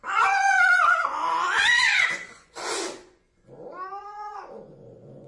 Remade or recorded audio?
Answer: remade